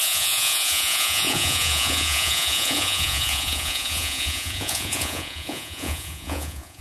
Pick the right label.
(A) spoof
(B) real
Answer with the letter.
A